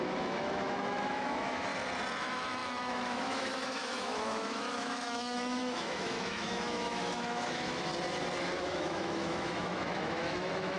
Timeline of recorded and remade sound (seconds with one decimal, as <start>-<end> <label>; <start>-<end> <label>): 0.0-1.7 remade; 1.7-2.2 recorded; 2.2-7.9 remade; 7.9-8.6 recorded; 8.6-10.8 remade